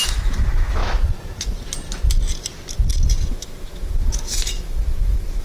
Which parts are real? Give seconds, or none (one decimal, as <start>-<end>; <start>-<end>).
0.8-3.3